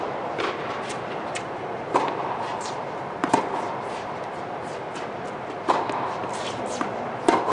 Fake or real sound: fake